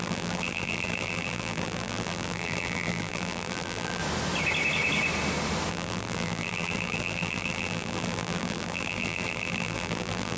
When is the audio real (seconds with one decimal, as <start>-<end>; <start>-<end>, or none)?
4.0-5.7